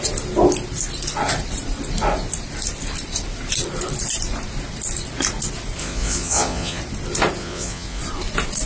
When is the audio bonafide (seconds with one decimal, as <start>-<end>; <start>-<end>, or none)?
0.0-5.8; 6.8-7.4; 8.0-8.7